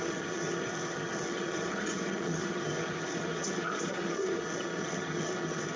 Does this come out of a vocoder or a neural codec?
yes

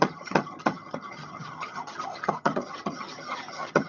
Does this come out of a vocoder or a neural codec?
yes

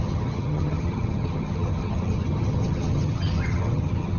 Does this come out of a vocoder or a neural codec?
yes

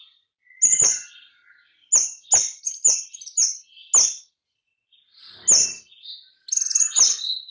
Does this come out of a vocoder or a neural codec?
no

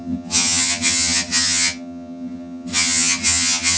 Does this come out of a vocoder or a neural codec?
yes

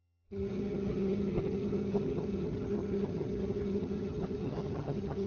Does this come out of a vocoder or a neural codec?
yes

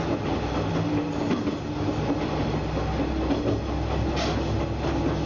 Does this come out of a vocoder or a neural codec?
no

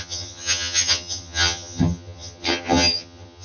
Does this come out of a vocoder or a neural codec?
yes